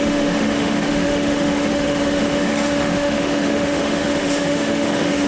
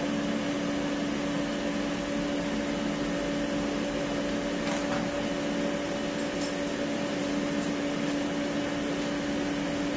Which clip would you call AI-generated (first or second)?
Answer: first